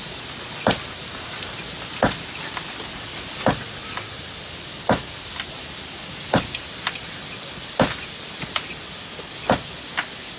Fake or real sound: real